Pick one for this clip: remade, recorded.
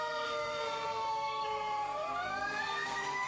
remade